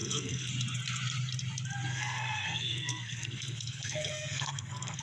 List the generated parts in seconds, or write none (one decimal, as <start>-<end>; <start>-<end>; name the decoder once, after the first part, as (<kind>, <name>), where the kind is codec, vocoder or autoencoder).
0.0-0.5 (codec, SNAC); 1.9-5.0